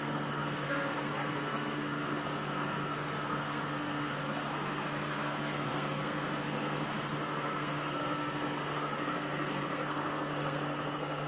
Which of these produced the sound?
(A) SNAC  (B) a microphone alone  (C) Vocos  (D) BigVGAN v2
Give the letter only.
A